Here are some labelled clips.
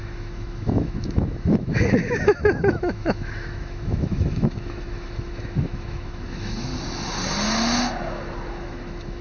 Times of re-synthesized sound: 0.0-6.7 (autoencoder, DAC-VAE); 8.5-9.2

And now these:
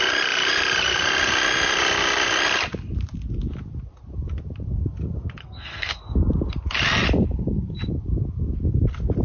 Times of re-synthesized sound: 5.4-6.0 (codec, SNAC)